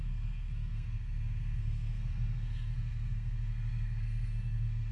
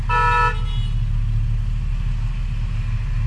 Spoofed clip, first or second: first